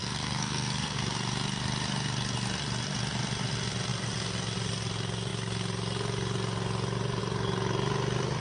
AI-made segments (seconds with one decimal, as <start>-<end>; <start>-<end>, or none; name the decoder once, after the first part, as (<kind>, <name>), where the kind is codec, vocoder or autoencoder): 0.0-1.0 (codec, SNAC)